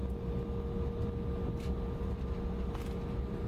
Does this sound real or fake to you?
real